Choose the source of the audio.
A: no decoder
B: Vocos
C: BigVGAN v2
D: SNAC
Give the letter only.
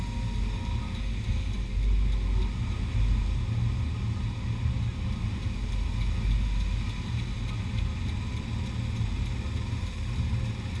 A